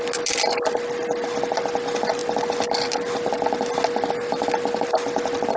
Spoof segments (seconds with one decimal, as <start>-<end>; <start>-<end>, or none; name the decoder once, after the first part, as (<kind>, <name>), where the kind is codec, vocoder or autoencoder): none

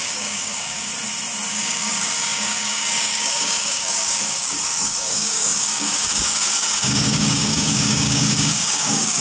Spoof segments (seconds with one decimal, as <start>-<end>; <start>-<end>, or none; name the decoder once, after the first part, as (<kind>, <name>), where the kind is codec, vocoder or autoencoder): 0.0-0.9 (codec, DAC); 1.5-9.2

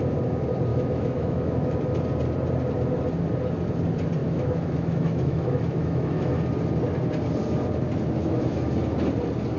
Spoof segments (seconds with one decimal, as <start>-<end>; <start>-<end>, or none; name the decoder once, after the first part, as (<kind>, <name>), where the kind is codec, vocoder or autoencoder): 0.7-1.8 (autoencoder, DAC-VAE); 4.2-6.3; 8.2-8.7

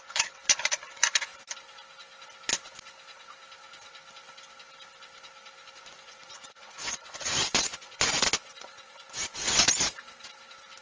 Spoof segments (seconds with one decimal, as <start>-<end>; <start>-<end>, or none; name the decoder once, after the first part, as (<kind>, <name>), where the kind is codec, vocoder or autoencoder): 0.0-1.3 (vocoder, Vocos); 5.7-9.2

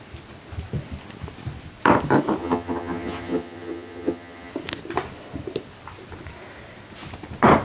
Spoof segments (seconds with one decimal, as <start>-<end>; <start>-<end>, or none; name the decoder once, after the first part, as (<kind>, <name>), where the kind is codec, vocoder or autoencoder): 2.4-4.5 (vocoder, HiFi-GAN)